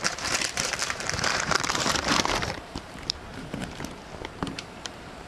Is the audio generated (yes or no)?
yes